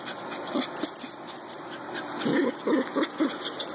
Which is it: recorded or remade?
recorded